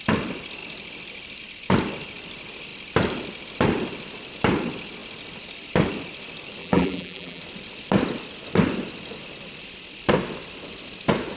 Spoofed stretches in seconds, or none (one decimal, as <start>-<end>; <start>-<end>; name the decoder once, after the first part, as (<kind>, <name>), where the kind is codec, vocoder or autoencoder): 6.6-7.4 (vocoder, BigVGAN v2)